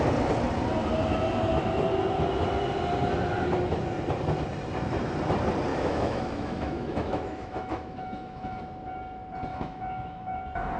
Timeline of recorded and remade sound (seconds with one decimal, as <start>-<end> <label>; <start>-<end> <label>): 0.0-5.7 recorded; 5.7-8.6 remade; 8.6-9.5 recorded; 9.5-10.4 remade; 10.4-10.8 recorded

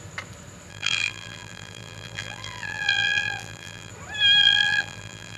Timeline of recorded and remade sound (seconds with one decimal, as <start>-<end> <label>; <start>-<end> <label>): 0.0-0.7 recorded; 0.7-3.9 remade; 3.9-4.4 recorded; 4.4-5.4 remade

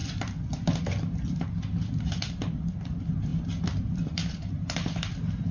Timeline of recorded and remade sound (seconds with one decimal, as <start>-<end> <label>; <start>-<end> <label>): 0.0-5.5 recorded

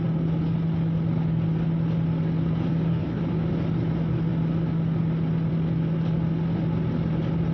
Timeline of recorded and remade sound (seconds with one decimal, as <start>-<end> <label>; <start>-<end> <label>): 0.0-2.7 recorded; 2.7-3.2 remade; 3.2-7.5 recorded

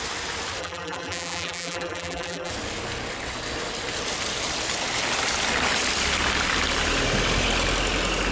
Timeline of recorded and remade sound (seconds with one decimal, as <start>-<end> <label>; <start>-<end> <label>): 0.0-0.6 recorded; 0.6-2.5 remade; 2.5-8.3 recorded